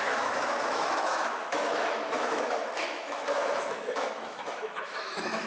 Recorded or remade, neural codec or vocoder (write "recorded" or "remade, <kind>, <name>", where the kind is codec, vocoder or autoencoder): remade, autoencoder, DAC-VAE